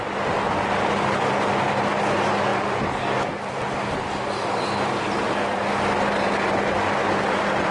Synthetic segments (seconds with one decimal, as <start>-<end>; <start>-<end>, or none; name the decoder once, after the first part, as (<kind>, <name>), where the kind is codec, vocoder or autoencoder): none